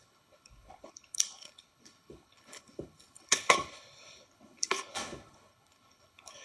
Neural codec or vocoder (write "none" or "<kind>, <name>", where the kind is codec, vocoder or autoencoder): codec, HILCodec